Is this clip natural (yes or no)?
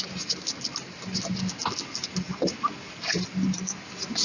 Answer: yes